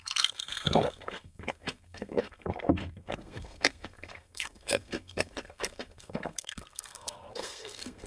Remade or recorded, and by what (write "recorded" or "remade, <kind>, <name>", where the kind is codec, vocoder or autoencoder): remade, codec, SNAC